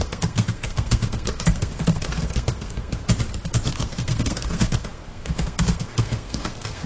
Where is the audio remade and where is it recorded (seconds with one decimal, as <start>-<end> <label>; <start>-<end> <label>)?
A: 0.0-3.0 remade; 3.0-3.8 recorded; 3.8-6.9 remade